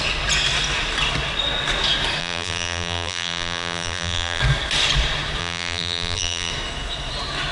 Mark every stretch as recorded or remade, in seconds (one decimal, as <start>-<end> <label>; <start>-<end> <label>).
0.0-2.2 recorded; 2.2-4.4 remade; 4.4-5.4 recorded; 5.4-6.5 remade; 6.5-7.5 recorded